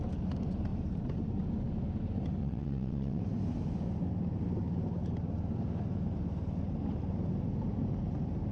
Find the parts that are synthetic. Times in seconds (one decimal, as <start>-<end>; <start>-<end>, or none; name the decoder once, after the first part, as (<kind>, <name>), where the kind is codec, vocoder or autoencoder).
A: 2.4-3.2 (vocoder, WaveNeXt)